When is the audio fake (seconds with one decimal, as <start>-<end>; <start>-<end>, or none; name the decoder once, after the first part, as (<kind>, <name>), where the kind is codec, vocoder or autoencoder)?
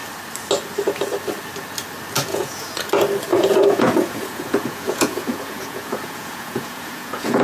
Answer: 2.3-2.9 (vocoder, Vocos); 3.3-7.4